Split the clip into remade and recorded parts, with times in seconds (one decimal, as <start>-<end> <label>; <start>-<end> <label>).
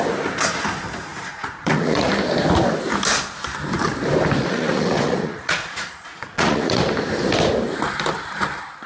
0.0-1.1 recorded; 1.1-2.1 remade; 2.1-4.4 recorded; 4.4-6.8 remade; 6.8-8.9 recorded